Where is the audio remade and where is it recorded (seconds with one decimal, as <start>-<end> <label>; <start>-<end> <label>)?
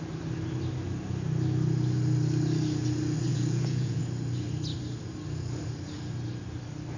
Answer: 0.0-3.3 recorded; 3.3-4.0 remade; 4.0-7.0 recorded